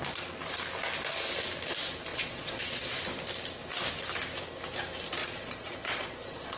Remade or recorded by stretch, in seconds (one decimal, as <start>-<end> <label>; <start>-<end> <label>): 0.0-2.1 recorded; 2.1-3.0 remade; 3.0-5.2 recorded; 5.2-6.6 remade